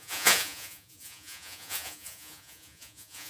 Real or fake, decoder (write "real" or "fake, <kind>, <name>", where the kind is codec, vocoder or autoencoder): fake, vocoder, Vocos